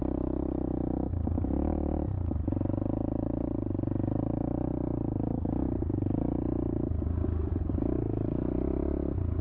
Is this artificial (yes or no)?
no